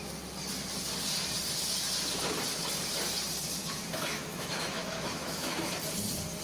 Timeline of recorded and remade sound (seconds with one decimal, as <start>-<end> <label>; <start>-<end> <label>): 0.0-3.6 recorded; 3.6-5.7 remade; 5.7-6.4 recorded